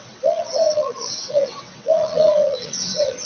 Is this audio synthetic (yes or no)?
yes